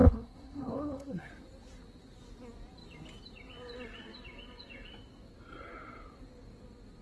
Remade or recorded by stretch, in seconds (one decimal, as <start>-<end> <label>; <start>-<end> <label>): 0.0-1.3 remade; 1.3-7.0 recorded